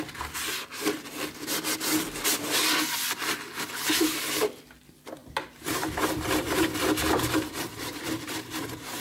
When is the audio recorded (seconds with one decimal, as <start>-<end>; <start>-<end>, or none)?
0.0-5.2